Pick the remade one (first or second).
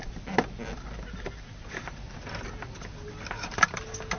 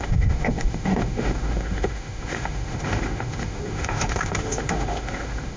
second